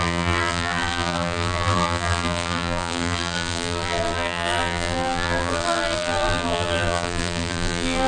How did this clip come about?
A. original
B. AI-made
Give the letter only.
B